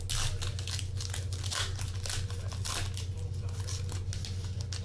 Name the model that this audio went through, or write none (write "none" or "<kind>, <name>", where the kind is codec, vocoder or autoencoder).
none